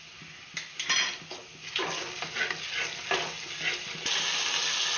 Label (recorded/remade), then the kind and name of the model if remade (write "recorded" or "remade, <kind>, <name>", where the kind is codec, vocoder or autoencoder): recorded